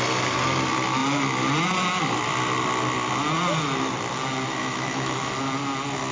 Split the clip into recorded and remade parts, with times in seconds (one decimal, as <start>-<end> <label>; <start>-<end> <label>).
0.0-4.6 recorded; 4.6-5.3 remade; 5.3-6.1 recorded